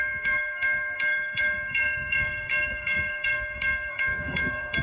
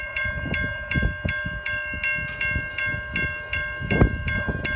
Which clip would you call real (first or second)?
second